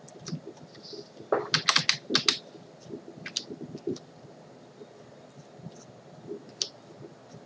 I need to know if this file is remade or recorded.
recorded